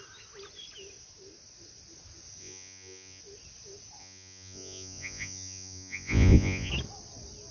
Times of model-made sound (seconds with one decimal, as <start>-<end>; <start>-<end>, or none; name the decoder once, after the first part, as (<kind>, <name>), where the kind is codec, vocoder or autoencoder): 2.4-3.2 (vocoder, Vocos); 4.0-6.7